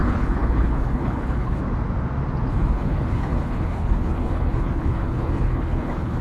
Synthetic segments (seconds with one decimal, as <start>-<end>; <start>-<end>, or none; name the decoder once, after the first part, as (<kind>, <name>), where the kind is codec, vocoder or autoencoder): 0.0-1.6 (codec, HILCodec); 2.5-6.2